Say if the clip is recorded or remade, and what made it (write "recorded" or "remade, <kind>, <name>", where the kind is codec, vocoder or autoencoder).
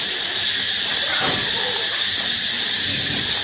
recorded